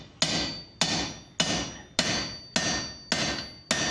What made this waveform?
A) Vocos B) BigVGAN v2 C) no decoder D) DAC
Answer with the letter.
C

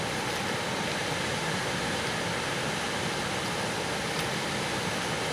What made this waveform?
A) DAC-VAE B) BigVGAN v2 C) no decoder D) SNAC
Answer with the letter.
C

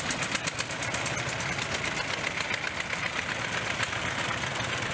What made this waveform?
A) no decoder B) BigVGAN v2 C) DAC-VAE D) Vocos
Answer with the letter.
A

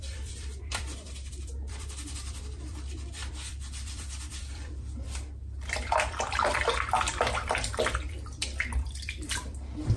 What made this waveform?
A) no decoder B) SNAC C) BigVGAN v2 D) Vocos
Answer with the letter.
C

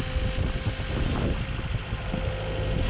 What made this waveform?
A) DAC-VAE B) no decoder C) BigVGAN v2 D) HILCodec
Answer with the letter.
B